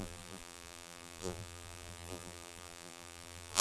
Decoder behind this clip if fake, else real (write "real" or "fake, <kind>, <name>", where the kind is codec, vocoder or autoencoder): fake, vocoder, BigVGAN v2